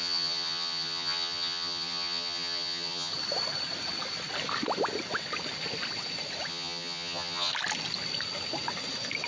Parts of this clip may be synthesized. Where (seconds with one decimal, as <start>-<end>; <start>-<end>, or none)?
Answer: 0.0-3.1; 6.5-7.5